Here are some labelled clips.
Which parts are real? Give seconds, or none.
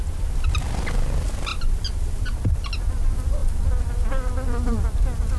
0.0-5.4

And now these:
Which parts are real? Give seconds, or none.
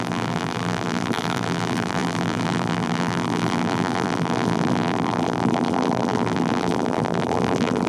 none